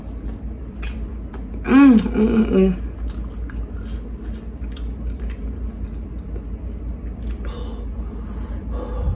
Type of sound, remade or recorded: recorded